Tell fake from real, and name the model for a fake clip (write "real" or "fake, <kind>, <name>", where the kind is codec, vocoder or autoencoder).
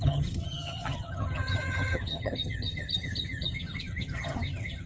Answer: fake, vocoder, HiFi-GAN